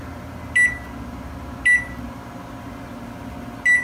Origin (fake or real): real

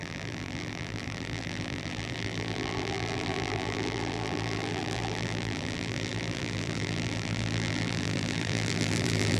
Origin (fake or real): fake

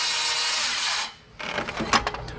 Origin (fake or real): real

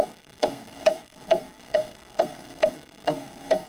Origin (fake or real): fake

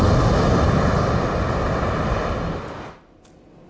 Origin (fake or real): real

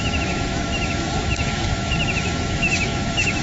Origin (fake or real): fake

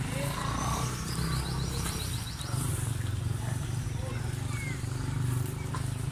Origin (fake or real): real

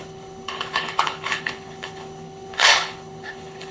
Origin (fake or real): fake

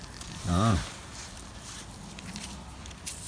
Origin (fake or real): real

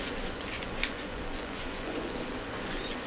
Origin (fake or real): fake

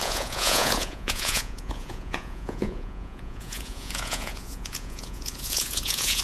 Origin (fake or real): fake